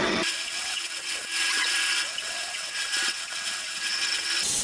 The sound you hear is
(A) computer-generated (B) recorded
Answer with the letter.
A